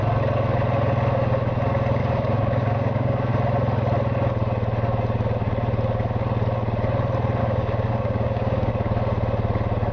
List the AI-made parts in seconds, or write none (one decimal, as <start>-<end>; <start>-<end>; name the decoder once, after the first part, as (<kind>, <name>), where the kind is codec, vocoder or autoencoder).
2.0-3.3 (codec, DAC); 7.4-8.7